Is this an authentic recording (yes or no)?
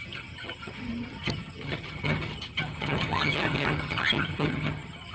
no